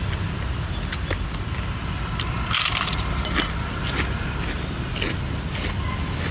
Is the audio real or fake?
real